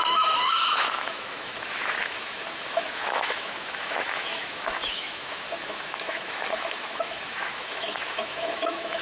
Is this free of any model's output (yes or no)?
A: no